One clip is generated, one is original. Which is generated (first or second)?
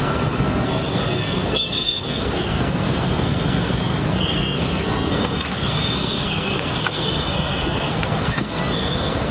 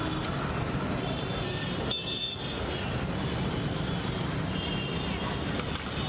first